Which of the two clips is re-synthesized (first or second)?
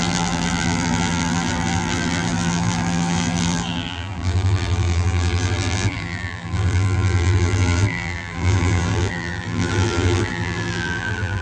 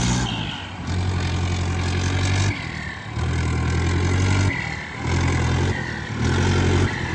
first